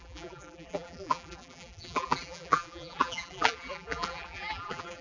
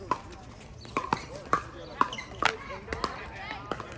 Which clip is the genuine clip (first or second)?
second